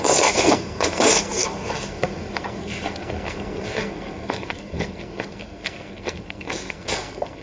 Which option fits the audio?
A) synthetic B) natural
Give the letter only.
A